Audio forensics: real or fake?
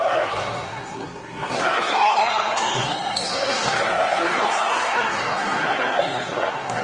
fake